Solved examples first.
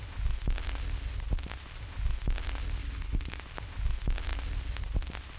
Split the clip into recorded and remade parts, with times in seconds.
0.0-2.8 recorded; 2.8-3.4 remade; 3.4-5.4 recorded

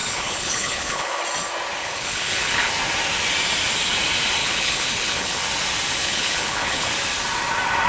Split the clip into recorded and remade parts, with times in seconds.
0.0-1.2 remade; 1.2-1.8 recorded; 1.8-2.7 remade; 2.7-4.4 recorded; 4.4-5.4 remade; 5.4-6.0 recorded; 6.0-6.9 remade; 6.9-7.9 recorded

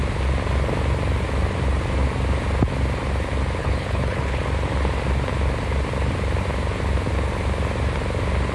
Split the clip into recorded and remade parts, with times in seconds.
0.0-3.6 recorded; 3.6-4.4 remade; 4.4-8.5 recorded

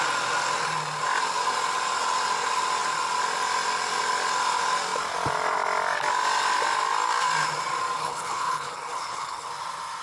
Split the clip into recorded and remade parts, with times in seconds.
0.0-8.0 recorded; 8.0-9.5 remade; 9.5-10.0 recorded

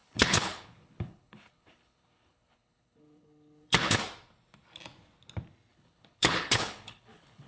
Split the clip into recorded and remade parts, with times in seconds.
0.0-4.0 remade; 4.0-5.7 recorded; 5.7-7.5 remade

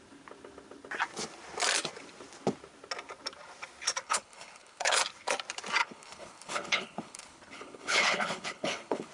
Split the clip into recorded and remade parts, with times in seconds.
0.0-4.0 recorded; 4.0-5.0 remade; 5.0-5.8 recorded; 5.8-9.1 remade